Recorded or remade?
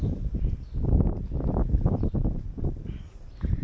recorded